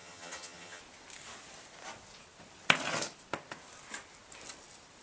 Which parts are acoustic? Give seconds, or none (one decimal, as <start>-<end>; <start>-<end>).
0.8-5.0